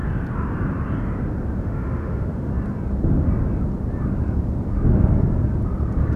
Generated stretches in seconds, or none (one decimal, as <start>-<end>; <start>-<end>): 1.6-2.5